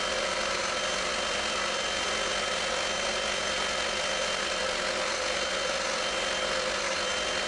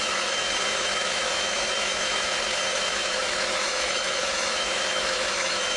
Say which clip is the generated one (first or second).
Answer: second